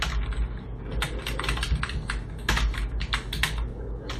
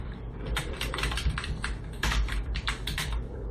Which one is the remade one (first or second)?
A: second